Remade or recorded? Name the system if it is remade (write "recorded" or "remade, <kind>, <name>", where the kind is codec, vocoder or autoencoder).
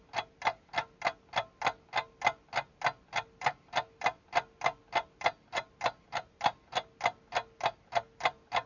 recorded